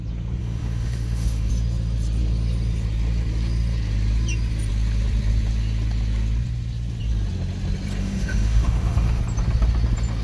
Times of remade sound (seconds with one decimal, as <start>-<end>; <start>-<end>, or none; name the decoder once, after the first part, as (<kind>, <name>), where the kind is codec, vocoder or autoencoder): 0.4-1.5 (autoencoder, DAC-VAE); 8.0-9.2